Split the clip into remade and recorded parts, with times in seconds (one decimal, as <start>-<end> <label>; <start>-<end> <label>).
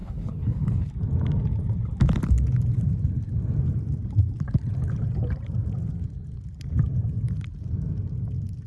0.0-0.9 remade; 0.9-8.7 recorded